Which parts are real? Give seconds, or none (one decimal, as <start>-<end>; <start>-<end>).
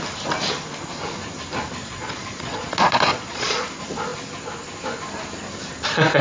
0.0-1.8; 3.6-6.2